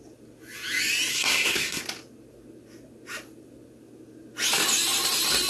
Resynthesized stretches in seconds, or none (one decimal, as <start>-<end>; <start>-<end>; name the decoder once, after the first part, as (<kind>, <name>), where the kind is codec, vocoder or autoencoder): 1.1-1.8 (codec, SNAC)